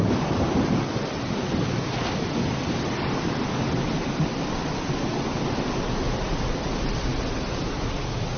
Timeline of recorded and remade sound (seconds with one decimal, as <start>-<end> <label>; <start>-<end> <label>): 0.0-8.4 recorded